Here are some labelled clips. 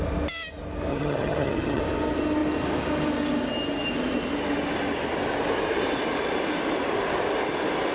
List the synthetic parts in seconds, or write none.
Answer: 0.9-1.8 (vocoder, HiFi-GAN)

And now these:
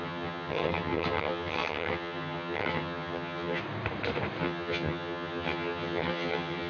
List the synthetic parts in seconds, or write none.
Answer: 0.0-3.6 (vocoder, HiFi-GAN); 4.4-6.7

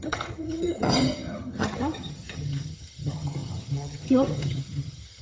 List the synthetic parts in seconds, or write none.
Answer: 0.0-5.2 (vocoder, HiFi-GAN)

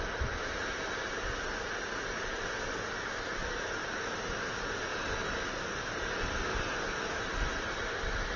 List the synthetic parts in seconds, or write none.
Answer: none